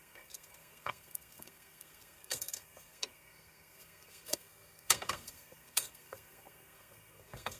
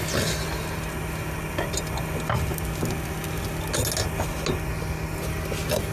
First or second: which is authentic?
second